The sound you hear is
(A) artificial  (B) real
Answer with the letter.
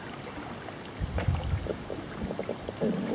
B